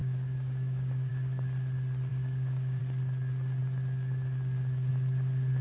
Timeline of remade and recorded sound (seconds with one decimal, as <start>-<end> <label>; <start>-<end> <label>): 0.0-1.1 remade; 1.1-2.1 recorded; 2.1-2.8 remade; 2.8-5.6 recorded